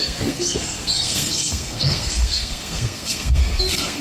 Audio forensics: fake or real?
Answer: fake